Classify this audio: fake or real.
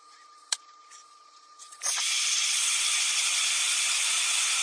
fake